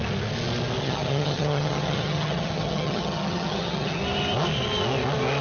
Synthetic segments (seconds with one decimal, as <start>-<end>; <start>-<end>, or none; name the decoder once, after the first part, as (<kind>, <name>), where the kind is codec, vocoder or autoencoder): 0.8-4.0 (vocoder, HiFi-GAN)